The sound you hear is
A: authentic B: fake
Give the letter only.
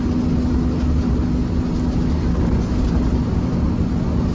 A